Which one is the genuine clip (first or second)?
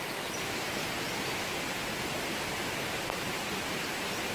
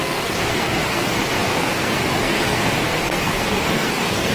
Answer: first